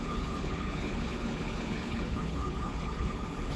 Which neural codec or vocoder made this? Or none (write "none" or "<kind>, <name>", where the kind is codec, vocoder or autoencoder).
codec, HILCodec